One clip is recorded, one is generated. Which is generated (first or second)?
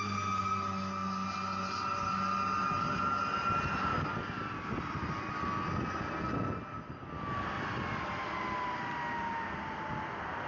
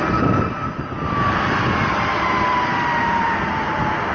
second